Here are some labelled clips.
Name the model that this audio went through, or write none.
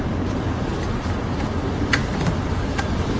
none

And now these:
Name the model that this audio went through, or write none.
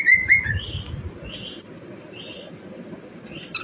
none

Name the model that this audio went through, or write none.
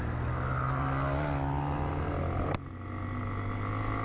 none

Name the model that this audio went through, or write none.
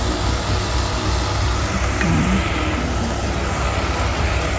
none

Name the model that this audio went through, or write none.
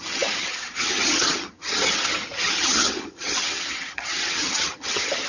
vocoder, HiFi-GAN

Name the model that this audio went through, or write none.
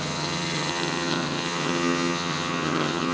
vocoder, HiFi-GAN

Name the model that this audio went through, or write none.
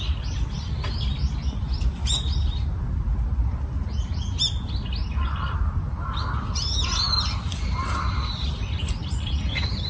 none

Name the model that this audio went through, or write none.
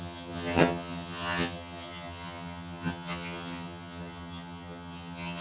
vocoder, HiFi-GAN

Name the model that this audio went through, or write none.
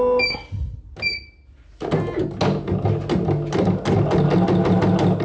none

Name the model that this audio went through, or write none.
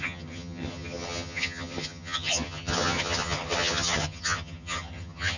vocoder, HiFi-GAN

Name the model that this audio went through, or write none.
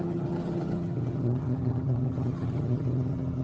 vocoder, HiFi-GAN